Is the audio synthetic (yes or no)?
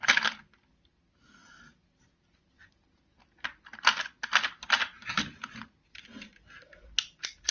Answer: no